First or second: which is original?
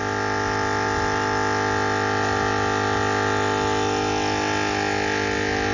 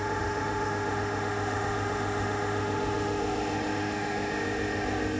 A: first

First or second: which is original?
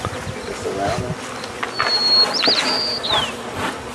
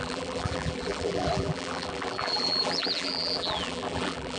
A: first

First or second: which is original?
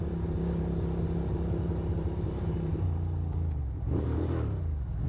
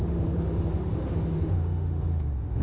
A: first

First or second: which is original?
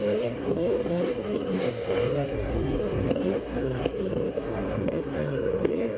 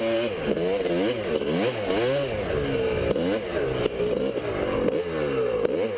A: second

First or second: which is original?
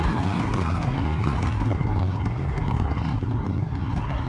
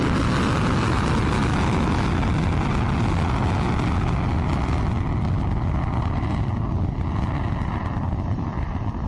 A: second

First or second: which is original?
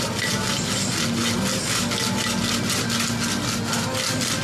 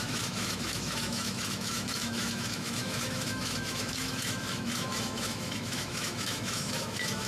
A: first